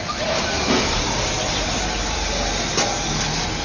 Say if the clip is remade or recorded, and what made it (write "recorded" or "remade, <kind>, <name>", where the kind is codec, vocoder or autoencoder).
recorded